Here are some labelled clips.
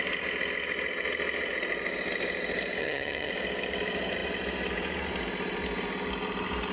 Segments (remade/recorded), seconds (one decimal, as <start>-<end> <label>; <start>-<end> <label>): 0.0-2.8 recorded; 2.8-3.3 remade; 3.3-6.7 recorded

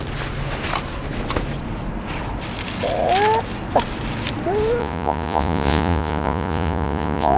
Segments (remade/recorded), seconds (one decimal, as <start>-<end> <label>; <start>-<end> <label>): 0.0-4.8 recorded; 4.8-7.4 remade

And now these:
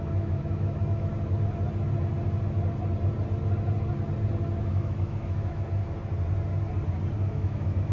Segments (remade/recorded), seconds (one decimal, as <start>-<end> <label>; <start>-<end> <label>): 0.0-1.1 remade; 1.1-4.6 recorded; 4.6-5.8 remade; 5.8-7.3 recorded; 7.3-7.9 remade

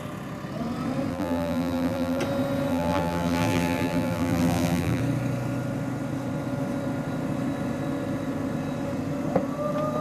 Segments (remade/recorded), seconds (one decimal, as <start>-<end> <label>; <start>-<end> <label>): 0.0-1.1 recorded; 1.1-2.2 remade; 2.2-2.7 recorded; 2.7-5.0 remade; 5.0-10.0 recorded

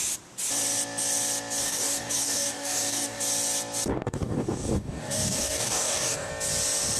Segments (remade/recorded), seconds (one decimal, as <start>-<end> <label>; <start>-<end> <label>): 0.0-1.6 recorded; 1.6-3.2 remade; 3.2-3.9 recorded; 3.9-6.3 remade; 6.3-7.0 recorded